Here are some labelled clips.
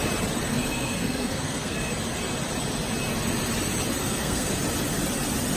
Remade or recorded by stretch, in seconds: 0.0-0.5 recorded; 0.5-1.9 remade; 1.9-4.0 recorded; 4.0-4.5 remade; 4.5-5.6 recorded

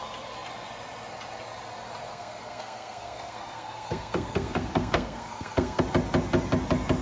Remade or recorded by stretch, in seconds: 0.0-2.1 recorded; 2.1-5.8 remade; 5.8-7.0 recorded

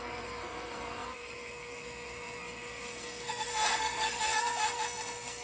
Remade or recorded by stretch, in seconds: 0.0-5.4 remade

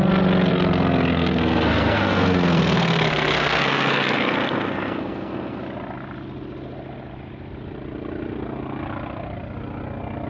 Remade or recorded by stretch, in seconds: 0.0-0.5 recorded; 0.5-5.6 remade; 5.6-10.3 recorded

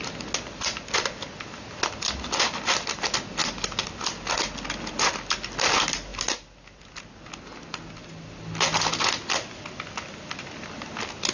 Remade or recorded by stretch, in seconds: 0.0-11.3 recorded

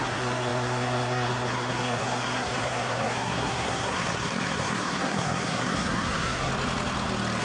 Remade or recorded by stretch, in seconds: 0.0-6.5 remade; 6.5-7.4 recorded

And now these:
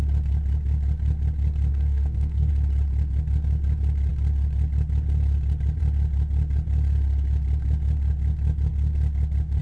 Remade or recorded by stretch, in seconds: 0.0-1.7 recorded; 1.7-2.5 remade; 2.5-9.6 recorded

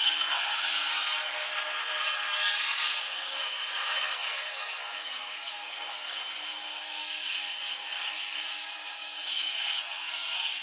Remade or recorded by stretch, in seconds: 0.0-1.5 remade; 1.5-2.0 recorded; 2.0-10.6 remade